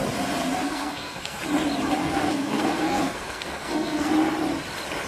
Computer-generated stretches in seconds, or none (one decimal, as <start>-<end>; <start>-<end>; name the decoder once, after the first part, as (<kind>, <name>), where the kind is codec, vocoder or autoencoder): 0.6-1.4 (codec, SNAC); 2.0-4.1